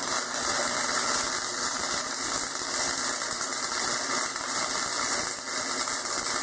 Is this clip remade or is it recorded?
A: recorded